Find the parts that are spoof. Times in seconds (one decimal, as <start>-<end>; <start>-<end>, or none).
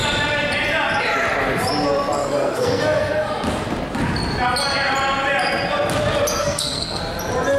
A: 2.2-3.3; 6.4-7.0